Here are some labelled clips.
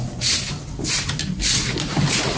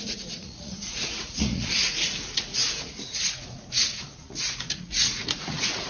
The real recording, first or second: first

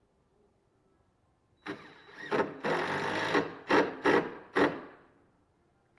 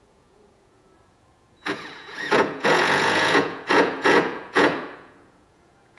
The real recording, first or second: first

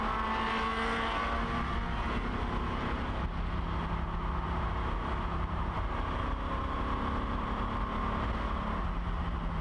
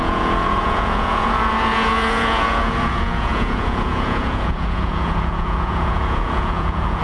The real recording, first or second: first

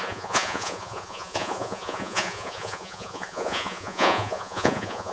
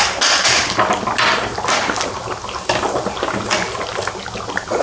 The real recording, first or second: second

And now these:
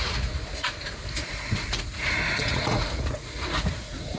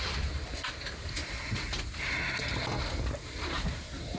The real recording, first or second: second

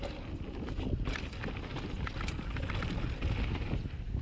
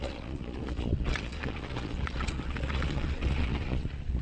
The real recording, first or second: first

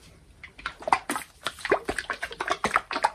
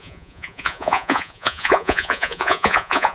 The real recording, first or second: first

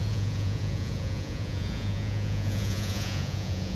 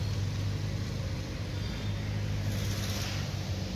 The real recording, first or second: second